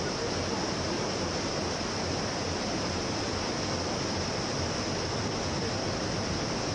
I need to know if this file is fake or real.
real